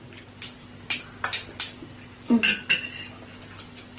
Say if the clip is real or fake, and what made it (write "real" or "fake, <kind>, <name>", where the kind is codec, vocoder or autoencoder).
real